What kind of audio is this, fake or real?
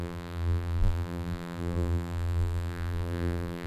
fake